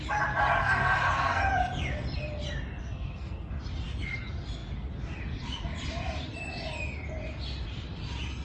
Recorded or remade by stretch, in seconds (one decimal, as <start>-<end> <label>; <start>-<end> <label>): 0.0-0.6 recorded; 0.6-1.4 remade; 1.4-2.8 recorded; 2.8-3.6 remade; 3.6-8.4 recorded